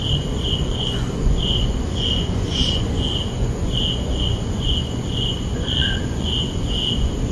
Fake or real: fake